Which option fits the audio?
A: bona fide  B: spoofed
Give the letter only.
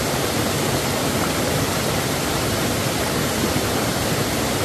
A